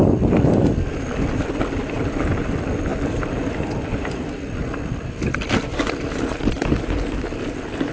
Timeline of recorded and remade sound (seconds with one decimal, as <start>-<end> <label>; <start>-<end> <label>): 0.0-7.9 recorded